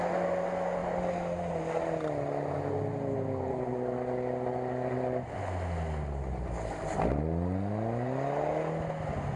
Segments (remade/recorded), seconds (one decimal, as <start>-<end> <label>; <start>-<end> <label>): 0.0-9.4 recorded